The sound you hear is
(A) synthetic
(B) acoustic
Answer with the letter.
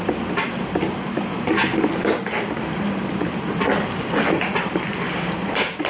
B